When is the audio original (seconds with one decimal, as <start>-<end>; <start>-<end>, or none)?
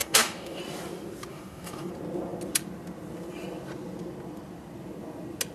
0.6-1.3; 1.9-5.5